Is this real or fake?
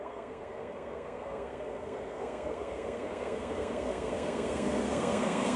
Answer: fake